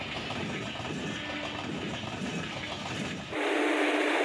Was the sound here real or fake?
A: real